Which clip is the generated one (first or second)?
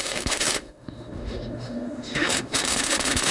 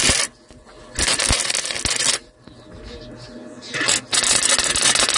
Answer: first